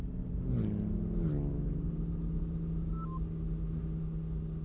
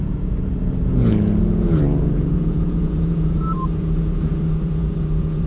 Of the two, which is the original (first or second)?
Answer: first